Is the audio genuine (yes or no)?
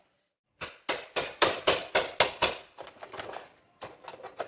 yes